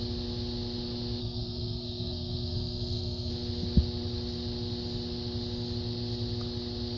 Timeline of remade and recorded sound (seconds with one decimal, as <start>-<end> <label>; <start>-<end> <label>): 0.0-1.2 recorded; 1.2-3.3 remade; 3.3-7.0 recorded